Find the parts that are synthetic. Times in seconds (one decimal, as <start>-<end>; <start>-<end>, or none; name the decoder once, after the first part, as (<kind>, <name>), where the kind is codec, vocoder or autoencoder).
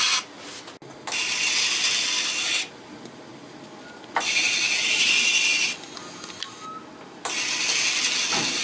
none